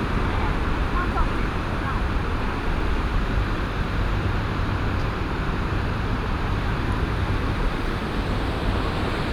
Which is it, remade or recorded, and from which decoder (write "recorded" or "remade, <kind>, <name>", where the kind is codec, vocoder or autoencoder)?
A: remade, vocoder, BigVGAN v2